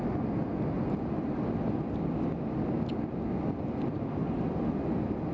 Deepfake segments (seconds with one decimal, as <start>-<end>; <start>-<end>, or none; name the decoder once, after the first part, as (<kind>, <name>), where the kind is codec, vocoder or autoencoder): none